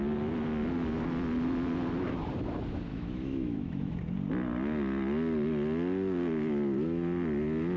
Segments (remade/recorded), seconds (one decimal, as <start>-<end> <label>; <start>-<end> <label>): 0.0-2.9 recorded; 2.9-4.0 remade; 4.0-7.8 recorded